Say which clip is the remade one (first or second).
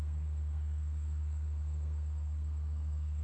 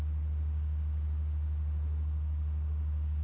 first